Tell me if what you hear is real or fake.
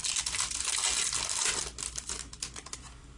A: real